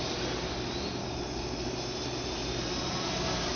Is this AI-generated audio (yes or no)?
no